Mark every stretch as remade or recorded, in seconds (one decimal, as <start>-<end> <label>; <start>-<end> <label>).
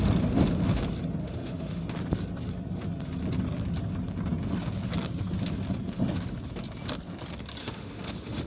0.0-1.2 recorded; 1.2-1.8 remade; 1.8-7.6 recorded; 7.6-8.5 remade